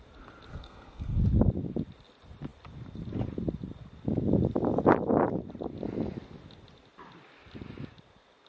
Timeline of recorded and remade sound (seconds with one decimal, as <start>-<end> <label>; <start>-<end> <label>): 0.0-0.5 recorded; 0.5-1.2 remade; 1.2-8.5 recorded